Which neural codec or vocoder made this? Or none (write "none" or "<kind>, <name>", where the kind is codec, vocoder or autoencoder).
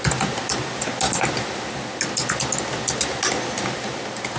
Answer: none